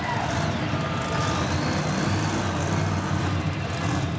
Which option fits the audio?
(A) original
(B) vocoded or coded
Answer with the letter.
A